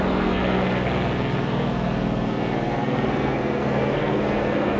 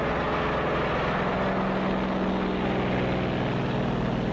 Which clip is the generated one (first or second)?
first